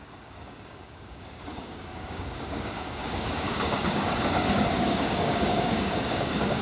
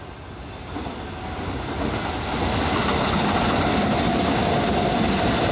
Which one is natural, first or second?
second